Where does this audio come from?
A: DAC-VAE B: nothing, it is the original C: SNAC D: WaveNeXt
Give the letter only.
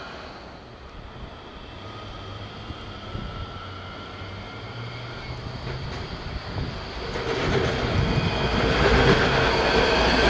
B